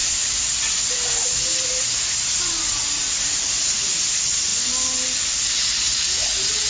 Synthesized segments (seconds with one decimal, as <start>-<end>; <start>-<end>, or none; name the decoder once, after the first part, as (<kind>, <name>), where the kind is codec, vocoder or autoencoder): none